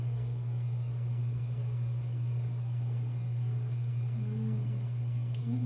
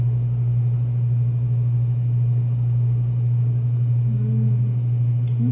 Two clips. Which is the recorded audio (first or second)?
second